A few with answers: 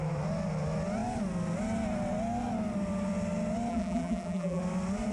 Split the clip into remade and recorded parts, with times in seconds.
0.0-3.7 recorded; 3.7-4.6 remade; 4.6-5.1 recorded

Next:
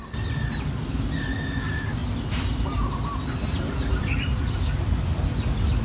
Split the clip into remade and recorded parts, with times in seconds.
0.0-5.8 recorded